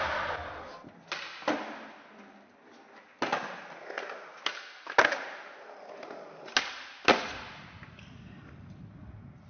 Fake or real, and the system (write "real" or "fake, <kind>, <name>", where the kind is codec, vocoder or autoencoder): real